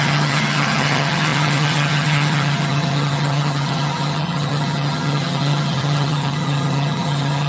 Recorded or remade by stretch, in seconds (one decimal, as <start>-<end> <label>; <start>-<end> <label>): 0.0-7.5 remade

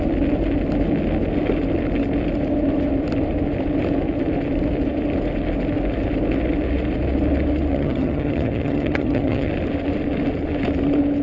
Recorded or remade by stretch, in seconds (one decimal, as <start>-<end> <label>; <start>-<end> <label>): 0.0-7.7 recorded; 7.7-9.5 remade; 9.5-11.2 recorded